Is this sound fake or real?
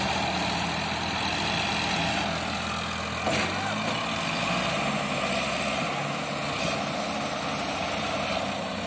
real